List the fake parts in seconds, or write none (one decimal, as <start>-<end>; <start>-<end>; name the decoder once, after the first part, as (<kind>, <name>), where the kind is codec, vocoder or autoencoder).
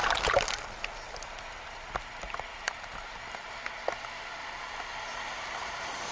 2.5-3.2 (vocoder, BigVGAN v2)